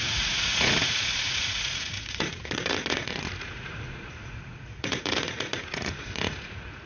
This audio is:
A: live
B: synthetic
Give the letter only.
B